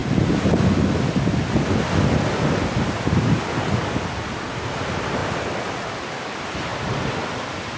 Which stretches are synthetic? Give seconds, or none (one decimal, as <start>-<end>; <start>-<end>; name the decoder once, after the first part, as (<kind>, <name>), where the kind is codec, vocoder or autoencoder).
none